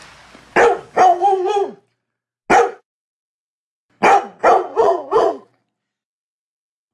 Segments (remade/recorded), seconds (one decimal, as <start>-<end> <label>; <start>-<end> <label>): 0.0-4.7 recorded; 4.7-5.6 remade; 5.6-6.9 recorded